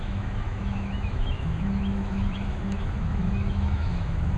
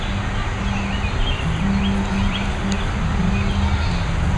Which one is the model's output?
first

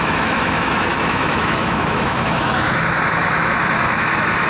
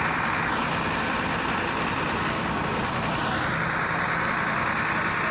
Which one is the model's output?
first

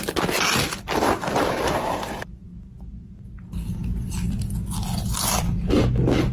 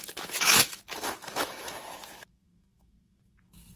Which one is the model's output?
second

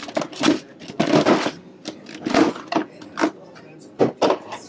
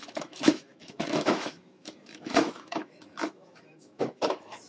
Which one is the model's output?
second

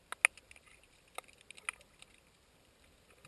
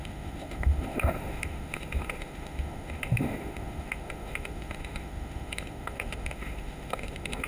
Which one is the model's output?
second